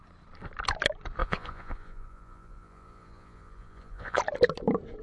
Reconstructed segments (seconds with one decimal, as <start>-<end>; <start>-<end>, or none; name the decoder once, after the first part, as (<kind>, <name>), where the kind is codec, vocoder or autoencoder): 1.2-4.2 (vocoder, Vocos)